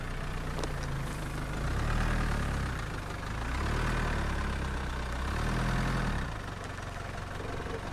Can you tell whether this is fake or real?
real